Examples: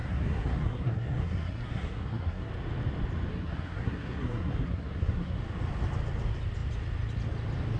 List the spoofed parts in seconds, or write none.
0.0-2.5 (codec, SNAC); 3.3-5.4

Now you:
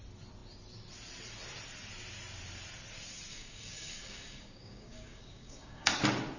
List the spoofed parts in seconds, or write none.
3.3-5.9 (codec, DAC)